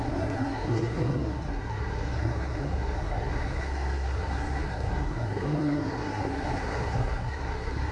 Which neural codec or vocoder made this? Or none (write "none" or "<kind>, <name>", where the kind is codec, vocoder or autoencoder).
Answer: codec, SNAC